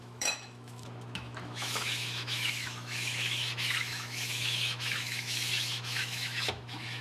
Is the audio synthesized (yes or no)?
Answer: yes